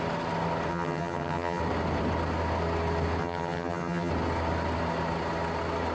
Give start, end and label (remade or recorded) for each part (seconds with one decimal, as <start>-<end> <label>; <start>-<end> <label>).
0.0-0.7 recorded; 0.7-1.6 remade; 1.6-3.2 recorded; 3.2-4.1 remade; 4.1-5.9 recorded